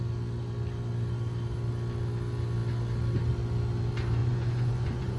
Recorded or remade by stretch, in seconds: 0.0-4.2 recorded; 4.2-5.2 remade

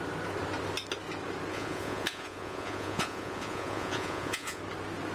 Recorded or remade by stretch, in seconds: 0.0-1.5 recorded; 1.5-4.6 remade; 4.6-5.1 recorded

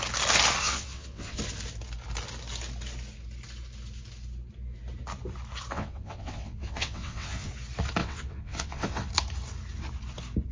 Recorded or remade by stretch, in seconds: 0.0-0.6 recorded; 0.6-1.4 remade; 1.4-5.7 recorded; 5.7-7.5 remade; 7.5-8.0 recorded; 8.0-9.1 remade; 9.1-10.5 recorded

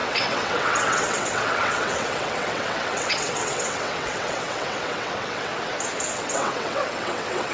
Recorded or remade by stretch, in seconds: 0.0-5.5 remade; 5.5-6.1 recorded; 6.1-7.5 remade

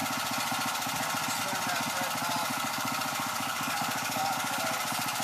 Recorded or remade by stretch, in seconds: 0.0-2.5 recorded; 2.5-4.6 remade; 4.6-5.2 recorded